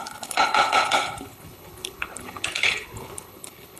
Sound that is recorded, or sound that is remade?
remade